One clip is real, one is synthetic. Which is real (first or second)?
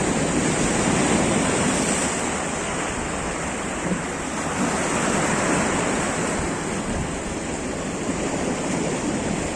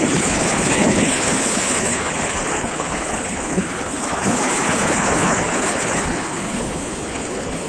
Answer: first